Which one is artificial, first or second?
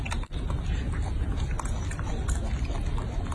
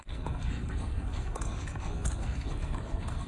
second